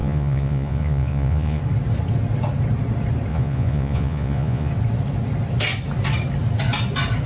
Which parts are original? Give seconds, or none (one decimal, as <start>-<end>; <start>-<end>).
1.6-3.3; 4.7-7.3